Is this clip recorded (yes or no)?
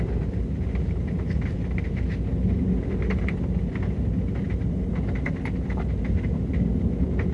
yes